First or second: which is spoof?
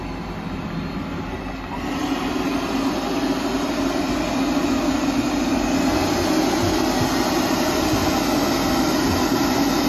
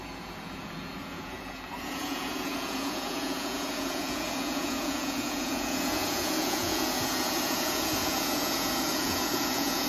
second